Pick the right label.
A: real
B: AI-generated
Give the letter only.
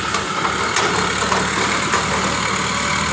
A